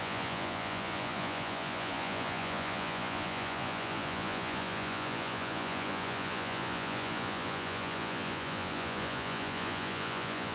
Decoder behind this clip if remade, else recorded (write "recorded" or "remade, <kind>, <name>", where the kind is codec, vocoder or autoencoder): remade, vocoder, Vocos